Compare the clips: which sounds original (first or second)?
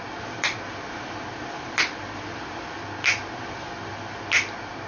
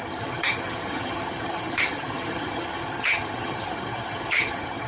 first